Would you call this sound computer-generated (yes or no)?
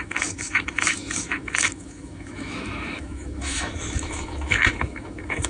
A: yes